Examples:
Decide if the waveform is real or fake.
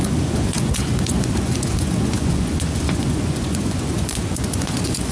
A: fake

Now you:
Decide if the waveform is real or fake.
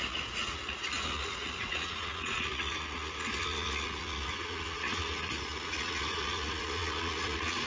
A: fake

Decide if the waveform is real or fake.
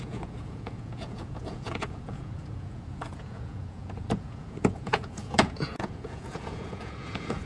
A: fake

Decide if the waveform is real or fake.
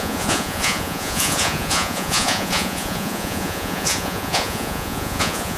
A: fake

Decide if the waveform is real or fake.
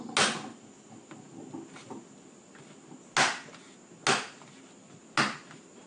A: real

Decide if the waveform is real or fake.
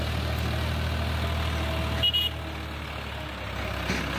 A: real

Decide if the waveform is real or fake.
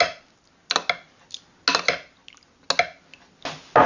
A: real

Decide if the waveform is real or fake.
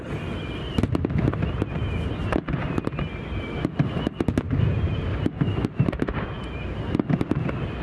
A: real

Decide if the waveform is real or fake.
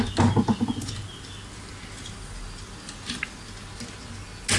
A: real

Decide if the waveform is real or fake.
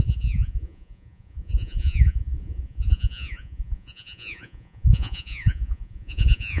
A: fake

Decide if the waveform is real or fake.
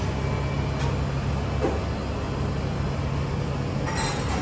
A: real